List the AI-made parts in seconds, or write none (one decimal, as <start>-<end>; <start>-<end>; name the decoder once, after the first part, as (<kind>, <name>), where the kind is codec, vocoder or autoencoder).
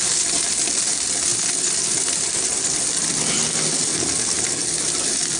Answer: 1.3-3.4 (vocoder, BigVGAN v2)